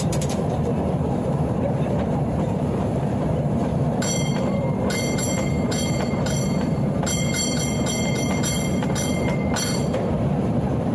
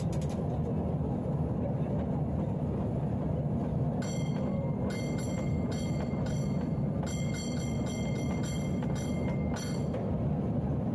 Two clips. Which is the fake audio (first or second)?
first